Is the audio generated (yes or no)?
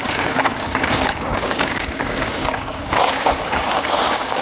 yes